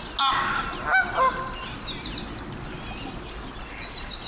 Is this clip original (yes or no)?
yes